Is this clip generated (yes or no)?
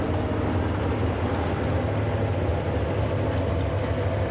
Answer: no